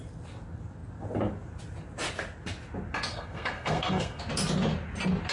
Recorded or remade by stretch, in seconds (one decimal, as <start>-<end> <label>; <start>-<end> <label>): 0.0-3.1 recorded; 3.1-4.2 remade; 4.2-5.3 recorded